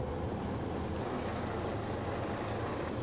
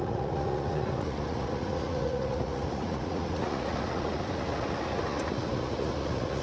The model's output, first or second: second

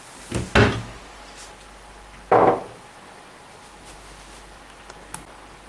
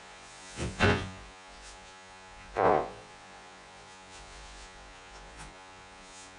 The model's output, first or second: second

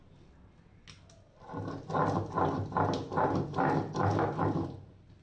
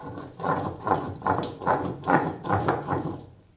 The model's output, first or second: second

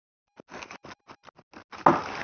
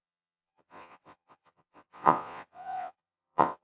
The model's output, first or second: second